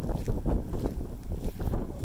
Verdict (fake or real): real